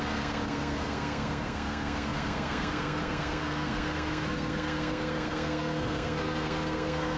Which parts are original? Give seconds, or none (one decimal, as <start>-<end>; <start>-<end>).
none